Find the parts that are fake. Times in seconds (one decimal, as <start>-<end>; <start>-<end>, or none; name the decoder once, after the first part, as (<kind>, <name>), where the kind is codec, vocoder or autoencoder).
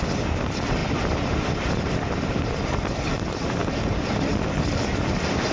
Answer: 0.0-0.8 (vocoder, BigVGAN v2); 1.6-3.6; 4.8-5.5